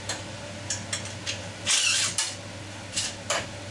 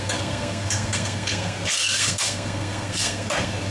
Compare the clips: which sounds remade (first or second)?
second